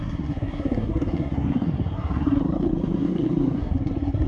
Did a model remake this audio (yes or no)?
yes